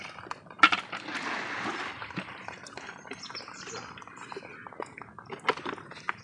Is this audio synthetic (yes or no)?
no